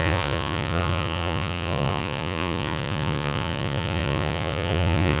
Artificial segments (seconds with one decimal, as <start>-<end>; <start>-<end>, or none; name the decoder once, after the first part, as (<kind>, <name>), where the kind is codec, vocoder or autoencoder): 0.0-5.2 (vocoder, Vocos)